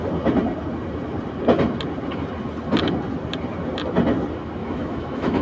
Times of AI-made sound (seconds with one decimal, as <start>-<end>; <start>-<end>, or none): 4.6-5.4

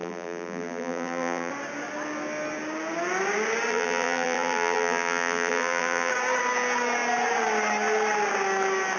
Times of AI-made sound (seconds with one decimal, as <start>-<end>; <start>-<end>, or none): 0.0-1.5; 3.7-6.1

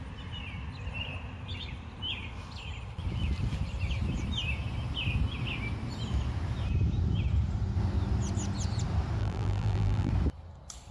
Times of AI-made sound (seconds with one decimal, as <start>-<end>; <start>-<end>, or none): 9.2-10.1

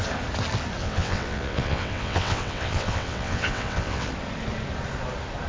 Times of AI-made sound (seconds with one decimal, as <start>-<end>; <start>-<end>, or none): 0.8-4.1

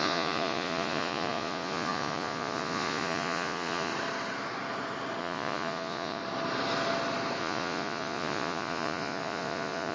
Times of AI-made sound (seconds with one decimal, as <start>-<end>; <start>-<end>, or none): 0.0-3.9; 5.2-6.2; 7.4-9.9

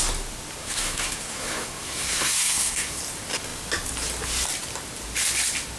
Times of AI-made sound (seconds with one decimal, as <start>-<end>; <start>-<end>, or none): 0.6-3.0

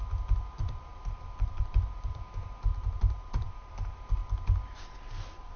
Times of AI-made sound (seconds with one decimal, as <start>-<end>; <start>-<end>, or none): 0.9-2.1; 2.7-3.7

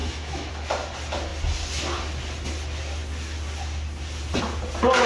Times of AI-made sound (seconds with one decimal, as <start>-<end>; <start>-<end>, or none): 0.0-0.5